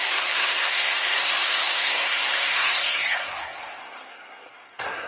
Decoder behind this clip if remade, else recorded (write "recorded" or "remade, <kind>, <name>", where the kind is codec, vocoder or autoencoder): remade, codec, SNAC